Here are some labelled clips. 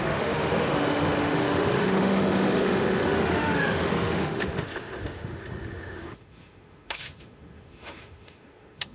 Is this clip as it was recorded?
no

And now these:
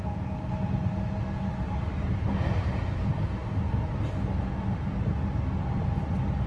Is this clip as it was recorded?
yes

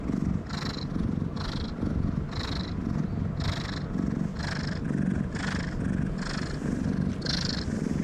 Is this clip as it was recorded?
yes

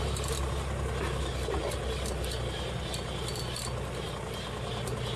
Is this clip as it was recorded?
yes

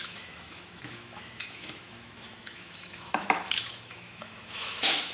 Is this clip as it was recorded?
no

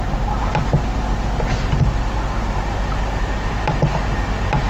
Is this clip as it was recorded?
yes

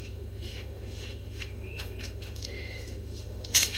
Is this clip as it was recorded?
no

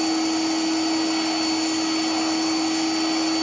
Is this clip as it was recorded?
yes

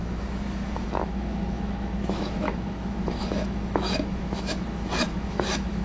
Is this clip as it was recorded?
no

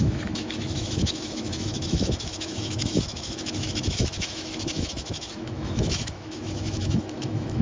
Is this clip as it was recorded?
no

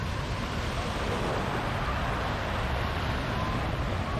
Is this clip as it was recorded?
yes